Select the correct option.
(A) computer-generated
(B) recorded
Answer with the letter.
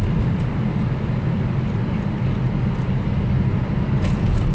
B